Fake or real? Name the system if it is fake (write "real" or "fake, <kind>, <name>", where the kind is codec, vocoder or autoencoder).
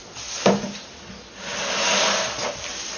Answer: real